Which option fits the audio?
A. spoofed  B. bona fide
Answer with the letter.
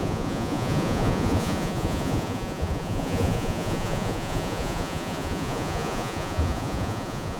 A